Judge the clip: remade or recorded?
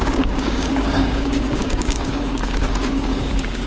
remade